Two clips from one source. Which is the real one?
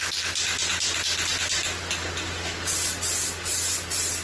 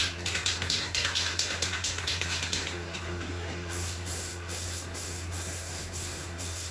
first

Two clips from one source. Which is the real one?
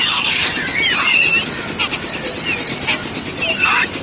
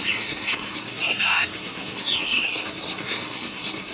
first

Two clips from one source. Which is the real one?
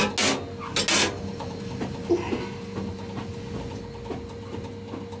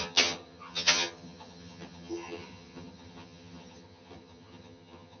first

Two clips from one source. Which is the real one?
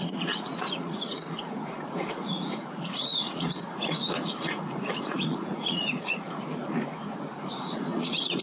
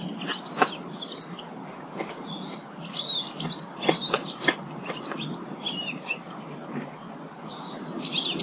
second